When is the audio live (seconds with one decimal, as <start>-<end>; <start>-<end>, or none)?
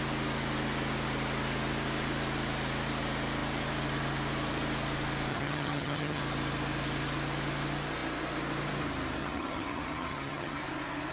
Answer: 0.0-5.3; 6.2-9.2; 10.6-11.1